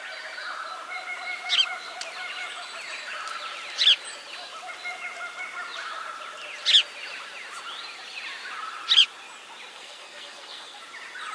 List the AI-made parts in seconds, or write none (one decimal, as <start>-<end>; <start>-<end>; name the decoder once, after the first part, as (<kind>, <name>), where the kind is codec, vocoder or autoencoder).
9.7-10.8 (codec, SNAC)